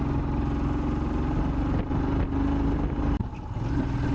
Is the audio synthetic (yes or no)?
no